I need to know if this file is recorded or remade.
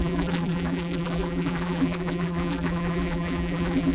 remade